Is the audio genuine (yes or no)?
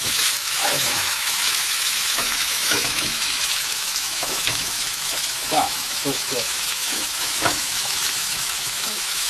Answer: no